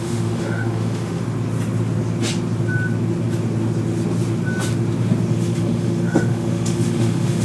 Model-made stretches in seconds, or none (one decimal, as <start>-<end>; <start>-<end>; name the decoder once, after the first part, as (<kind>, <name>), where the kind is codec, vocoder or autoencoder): 0.0-1.2 (autoencoder, DAC-VAE); 5.3-7.4

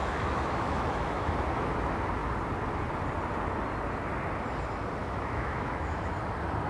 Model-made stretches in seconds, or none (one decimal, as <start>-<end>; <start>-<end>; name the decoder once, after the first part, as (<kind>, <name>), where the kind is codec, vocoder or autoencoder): 0.0-1.3 (autoencoder, DAC-VAE); 5.0-6.1